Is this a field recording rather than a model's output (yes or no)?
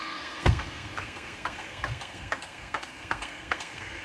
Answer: no